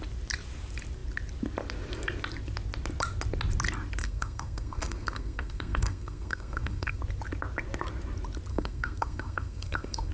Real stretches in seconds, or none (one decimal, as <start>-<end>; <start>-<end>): 0.0-4.0; 7.0-8.5